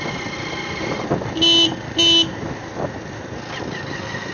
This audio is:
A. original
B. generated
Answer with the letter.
A